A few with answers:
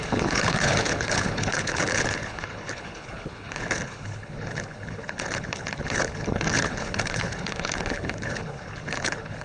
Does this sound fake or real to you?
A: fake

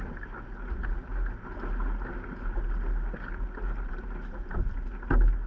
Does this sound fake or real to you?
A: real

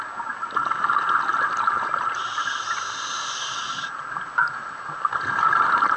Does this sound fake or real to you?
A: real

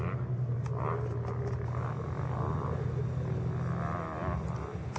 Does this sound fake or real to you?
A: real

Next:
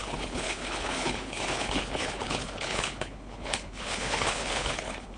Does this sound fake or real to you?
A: fake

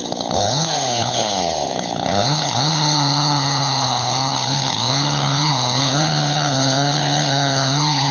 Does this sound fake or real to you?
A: fake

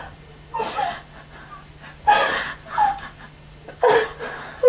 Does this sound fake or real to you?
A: real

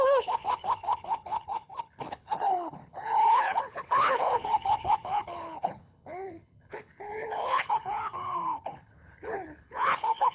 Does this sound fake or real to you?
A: fake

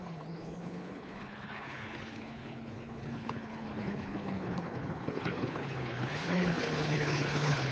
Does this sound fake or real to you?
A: fake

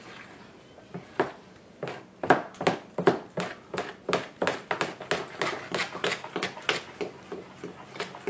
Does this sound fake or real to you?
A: real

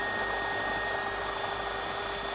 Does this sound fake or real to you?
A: real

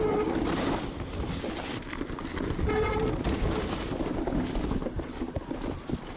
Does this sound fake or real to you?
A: real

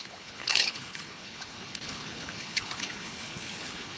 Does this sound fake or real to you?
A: fake